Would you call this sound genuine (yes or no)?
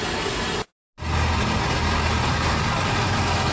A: yes